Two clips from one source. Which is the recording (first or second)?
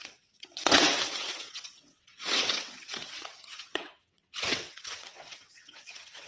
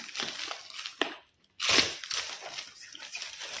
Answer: second